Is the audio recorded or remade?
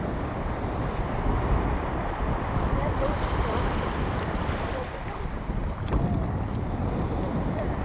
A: remade